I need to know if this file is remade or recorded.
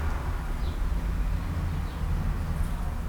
recorded